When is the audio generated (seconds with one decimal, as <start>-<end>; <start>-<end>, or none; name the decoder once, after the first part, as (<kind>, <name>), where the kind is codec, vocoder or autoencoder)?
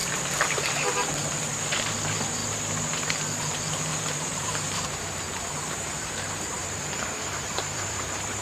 0.0-2.4 (vocoder, BigVGAN v2); 3.4-8.4